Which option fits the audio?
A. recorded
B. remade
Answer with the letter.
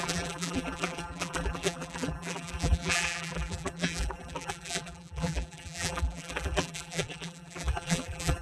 B